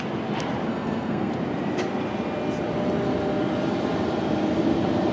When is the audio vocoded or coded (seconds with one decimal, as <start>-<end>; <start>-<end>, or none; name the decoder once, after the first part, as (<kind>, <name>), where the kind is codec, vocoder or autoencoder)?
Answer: 0.7-1.3 (codec, SNAC)